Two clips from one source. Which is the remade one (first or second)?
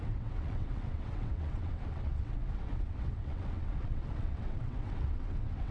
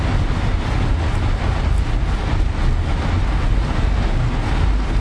first